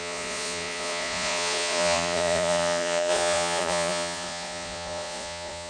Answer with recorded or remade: remade